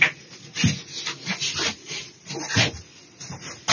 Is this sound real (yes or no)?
yes